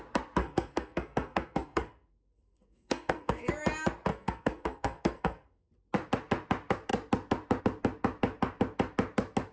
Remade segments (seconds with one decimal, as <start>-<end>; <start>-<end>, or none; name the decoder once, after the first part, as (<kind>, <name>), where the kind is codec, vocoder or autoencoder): 0.4-3.5 (codec, SNAC); 4.1-5.7